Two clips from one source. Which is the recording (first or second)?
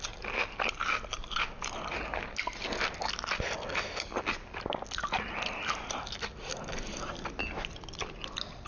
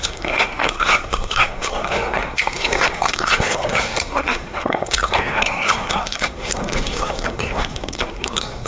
first